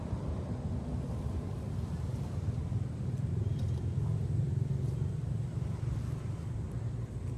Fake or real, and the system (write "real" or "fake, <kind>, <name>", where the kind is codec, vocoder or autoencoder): fake, vocoder, BigVGAN v2